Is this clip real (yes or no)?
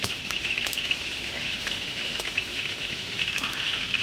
no